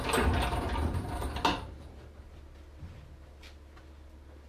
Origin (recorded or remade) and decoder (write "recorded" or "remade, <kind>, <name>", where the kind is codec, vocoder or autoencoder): recorded